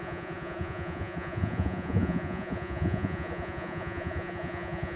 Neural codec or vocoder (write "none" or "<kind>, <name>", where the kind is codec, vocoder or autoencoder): vocoder, Vocos